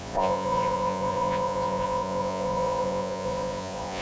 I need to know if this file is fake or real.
fake